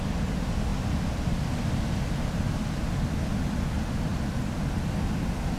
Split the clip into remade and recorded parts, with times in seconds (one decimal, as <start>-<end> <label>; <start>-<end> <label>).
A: 0.0-5.6 recorded